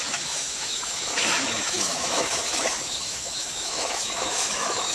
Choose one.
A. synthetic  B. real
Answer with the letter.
A